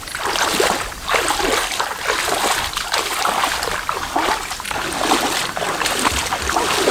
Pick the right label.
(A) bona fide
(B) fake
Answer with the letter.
A